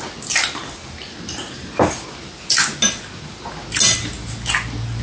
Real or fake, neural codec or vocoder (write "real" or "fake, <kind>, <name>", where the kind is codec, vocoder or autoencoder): real